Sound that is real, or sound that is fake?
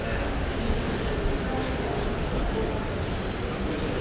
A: real